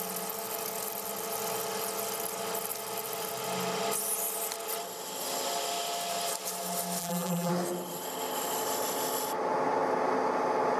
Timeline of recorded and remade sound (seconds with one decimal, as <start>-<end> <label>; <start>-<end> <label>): 0.0-7.0 recorded; 7.0-7.5 remade; 7.5-10.8 recorded